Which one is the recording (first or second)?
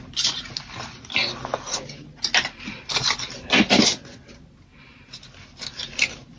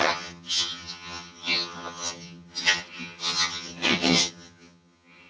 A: first